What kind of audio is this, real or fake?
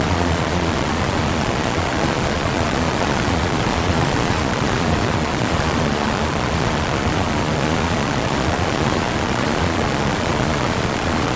fake